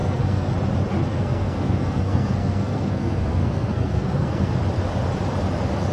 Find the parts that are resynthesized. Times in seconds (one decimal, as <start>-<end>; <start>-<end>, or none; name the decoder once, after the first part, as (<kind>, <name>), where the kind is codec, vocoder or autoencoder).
0.0-0.5 (codec, SNAC); 1.1-4.6